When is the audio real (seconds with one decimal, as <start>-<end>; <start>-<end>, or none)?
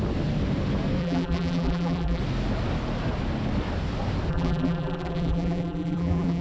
0.0-1.0; 2.2-4.3